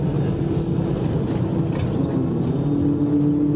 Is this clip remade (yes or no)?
no